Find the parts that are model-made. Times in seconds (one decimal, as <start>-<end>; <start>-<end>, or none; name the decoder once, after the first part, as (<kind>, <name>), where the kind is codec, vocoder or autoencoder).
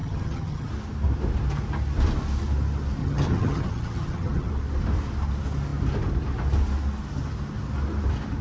0.0-0.7 (vocoder, HiFi-GAN); 3.0-4.5